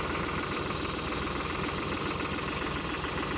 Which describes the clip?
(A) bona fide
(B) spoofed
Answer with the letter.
A